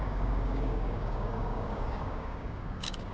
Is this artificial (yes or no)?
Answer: yes